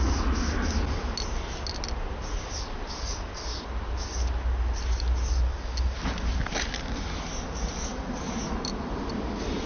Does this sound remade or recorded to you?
recorded